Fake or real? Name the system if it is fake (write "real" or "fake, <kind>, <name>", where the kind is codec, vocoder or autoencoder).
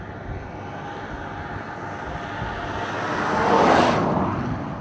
real